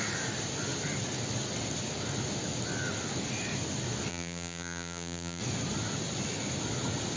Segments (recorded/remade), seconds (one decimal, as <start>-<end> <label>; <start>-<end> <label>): 0.0-4.1 recorded; 4.1-5.4 remade; 5.4-7.2 recorded